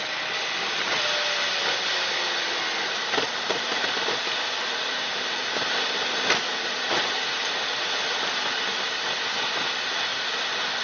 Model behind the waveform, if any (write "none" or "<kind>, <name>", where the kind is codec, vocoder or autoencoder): none